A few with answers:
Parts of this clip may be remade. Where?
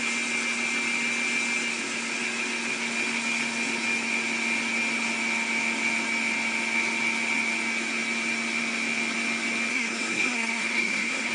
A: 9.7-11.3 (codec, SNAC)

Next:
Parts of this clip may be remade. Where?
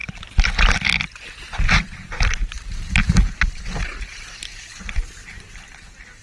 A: none